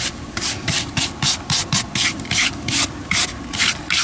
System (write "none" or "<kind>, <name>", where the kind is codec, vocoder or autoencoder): none